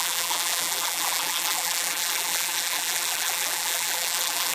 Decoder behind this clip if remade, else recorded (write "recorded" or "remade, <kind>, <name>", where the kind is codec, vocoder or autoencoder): remade, vocoder, BigVGAN v2